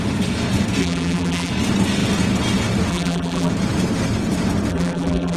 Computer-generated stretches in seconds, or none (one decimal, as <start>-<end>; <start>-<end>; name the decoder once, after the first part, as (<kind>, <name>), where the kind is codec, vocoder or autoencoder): 0.8-1.5 (vocoder, BigVGAN v2); 2.9-3.5; 4.7-5.4